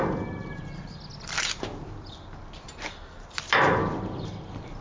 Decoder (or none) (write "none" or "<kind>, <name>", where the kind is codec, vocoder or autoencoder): none